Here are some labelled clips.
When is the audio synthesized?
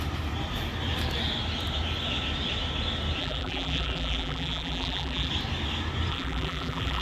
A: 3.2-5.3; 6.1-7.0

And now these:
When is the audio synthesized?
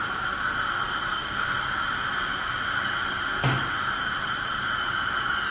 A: none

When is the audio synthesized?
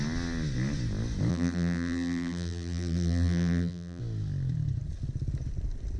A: 1.3-4.0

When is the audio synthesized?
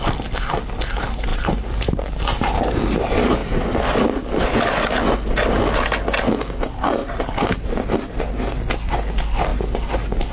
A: 1.3-2.0